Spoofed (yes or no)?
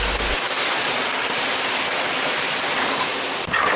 no